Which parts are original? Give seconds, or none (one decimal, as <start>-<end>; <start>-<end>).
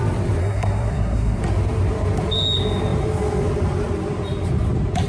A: 0.0-0.4; 1.4-5.1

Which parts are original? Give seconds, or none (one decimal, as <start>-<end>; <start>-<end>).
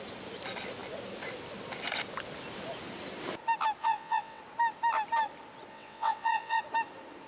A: 0.0-3.8; 4.4-5.7; 6.6-7.3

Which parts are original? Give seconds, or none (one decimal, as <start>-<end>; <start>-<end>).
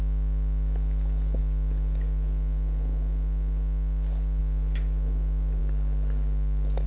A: 0.0-6.9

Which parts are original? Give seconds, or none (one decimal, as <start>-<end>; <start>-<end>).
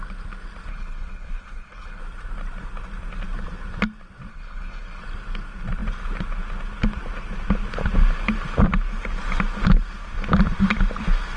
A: 0.0-0.7; 2.0-4.3; 5.0-11.4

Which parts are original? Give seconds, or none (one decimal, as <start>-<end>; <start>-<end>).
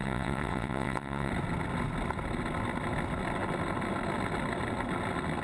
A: 1.3-5.4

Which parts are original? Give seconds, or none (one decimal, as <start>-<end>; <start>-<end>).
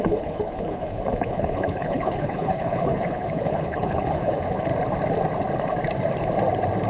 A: 4.7-6.9